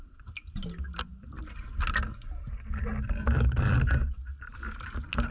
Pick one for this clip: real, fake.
real